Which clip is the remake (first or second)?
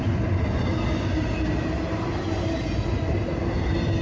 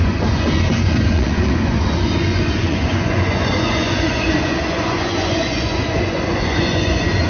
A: second